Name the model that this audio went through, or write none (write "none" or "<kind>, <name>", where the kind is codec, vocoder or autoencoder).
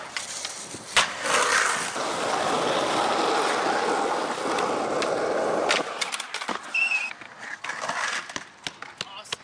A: none